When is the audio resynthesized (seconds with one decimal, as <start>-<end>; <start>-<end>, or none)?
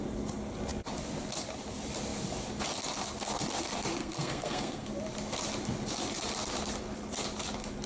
4.0-4.9